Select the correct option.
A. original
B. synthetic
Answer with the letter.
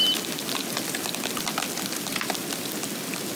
A